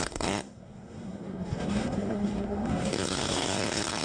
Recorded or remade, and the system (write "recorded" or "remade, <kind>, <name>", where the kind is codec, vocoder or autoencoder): remade, codec, SNAC